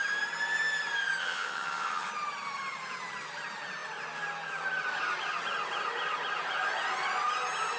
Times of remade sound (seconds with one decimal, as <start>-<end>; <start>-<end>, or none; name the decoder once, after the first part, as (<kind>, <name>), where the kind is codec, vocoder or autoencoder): 1.2-2.1 (vocoder, HiFi-GAN)